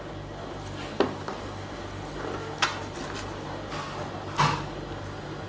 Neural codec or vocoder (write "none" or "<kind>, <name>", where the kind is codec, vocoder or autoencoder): none